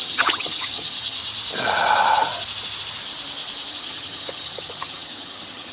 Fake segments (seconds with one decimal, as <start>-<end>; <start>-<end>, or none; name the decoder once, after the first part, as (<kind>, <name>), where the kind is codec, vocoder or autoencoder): 0.0-1.2 (vocoder, HiFi-GAN); 3.7-5.7

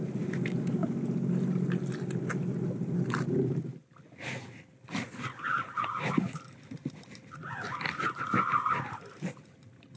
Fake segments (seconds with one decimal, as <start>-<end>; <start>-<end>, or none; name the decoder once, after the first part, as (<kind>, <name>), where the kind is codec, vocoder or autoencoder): none

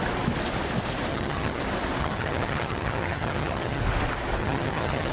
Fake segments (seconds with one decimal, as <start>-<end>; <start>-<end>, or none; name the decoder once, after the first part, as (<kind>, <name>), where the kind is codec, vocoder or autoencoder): 1.1-1.6 (vocoder, HiFi-GAN); 2.0-3.8; 4.4-5.1

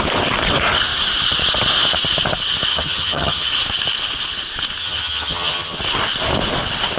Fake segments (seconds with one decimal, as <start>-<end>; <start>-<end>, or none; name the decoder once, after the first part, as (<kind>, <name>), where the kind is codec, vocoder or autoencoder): 2.7-3.5 (vocoder, HiFi-GAN); 4.8-5.8

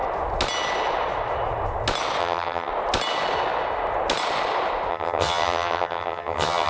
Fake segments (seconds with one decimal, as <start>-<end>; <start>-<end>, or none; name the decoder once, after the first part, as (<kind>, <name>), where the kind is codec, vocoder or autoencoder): 2.2-2.7 (vocoder, HiFi-GAN); 4.9-6.7

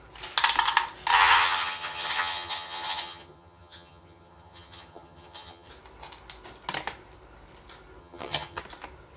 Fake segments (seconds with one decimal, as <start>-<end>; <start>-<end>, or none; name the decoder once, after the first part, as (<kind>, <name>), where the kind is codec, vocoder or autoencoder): 1.1-5.7 (vocoder, HiFi-GAN); 8.0-8.6